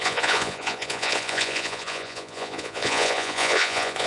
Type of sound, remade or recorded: remade